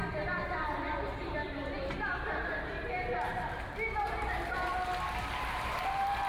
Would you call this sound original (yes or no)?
no